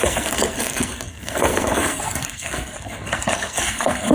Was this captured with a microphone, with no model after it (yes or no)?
no